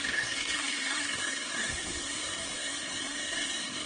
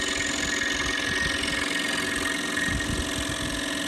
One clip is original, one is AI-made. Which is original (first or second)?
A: second